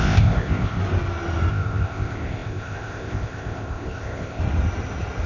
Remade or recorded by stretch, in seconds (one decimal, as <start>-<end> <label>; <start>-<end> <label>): 0.0-0.8 remade; 0.8-1.5 recorded; 1.5-4.4 remade; 4.4-5.3 recorded